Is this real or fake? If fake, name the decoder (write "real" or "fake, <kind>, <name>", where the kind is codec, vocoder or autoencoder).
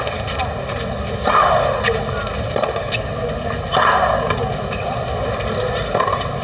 real